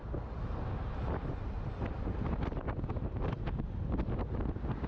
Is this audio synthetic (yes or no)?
no